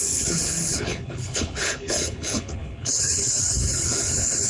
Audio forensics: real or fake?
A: fake